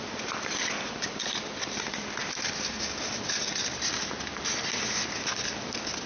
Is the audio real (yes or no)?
yes